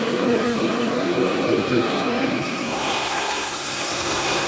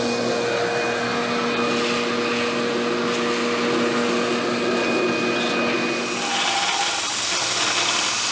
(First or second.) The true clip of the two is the second